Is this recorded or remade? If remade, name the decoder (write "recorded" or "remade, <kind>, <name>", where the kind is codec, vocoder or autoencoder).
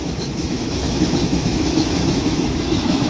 remade, autoencoder, DAC-VAE